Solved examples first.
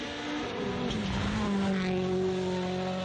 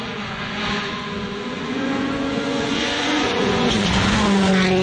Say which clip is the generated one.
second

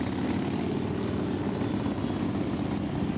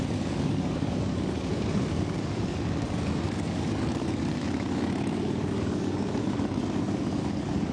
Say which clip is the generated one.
second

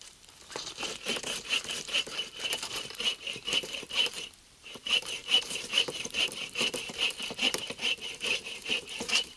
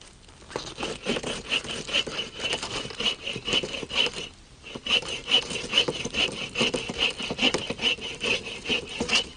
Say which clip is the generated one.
first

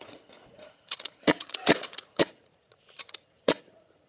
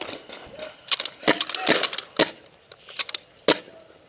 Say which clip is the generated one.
first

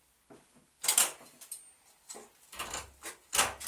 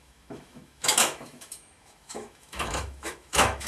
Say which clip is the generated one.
second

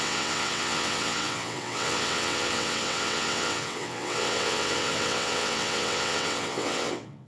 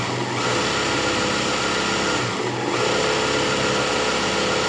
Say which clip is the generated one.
first